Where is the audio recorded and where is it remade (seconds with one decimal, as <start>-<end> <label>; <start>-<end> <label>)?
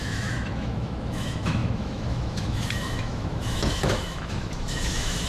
0.0-5.3 remade